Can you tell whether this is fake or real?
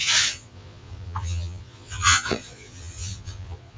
fake